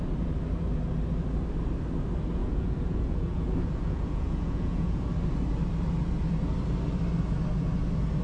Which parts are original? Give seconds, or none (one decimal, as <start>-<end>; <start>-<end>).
0.0-2.4; 5.0-8.2